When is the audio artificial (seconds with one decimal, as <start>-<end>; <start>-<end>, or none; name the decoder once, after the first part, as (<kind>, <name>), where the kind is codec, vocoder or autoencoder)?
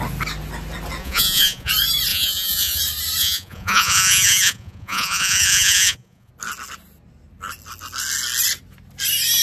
1.0-1.7 (vocoder, Vocos); 2.1-2.8; 3.2-6.3